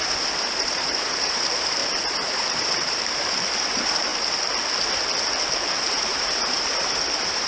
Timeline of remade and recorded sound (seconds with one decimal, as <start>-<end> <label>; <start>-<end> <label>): 0.0-4.1 remade; 4.1-5.9 recorded; 5.9-7.5 remade